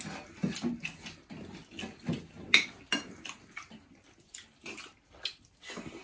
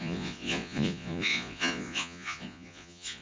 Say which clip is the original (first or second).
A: first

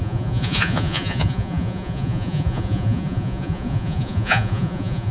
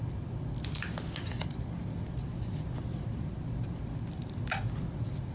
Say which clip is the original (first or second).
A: second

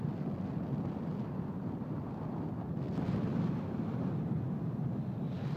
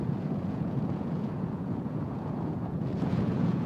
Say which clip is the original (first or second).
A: first